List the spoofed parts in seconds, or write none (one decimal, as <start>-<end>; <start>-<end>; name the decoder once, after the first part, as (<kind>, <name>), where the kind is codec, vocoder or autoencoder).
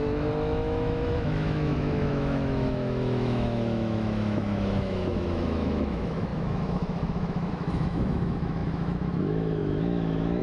0.0-10.4 (autoencoder, DAC-VAE)